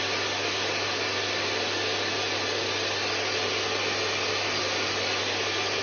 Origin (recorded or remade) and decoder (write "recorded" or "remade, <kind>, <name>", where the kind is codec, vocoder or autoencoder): recorded